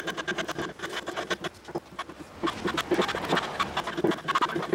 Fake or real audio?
real